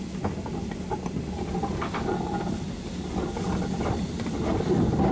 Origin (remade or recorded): recorded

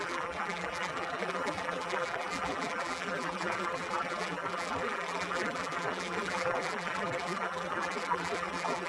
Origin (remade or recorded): remade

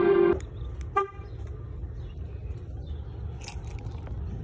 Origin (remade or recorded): recorded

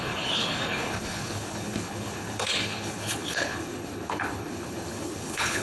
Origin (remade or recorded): remade